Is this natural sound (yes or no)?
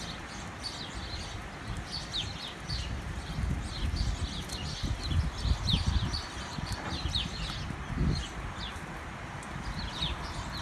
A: yes